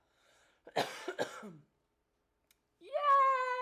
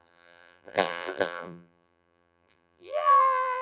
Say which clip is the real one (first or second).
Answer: first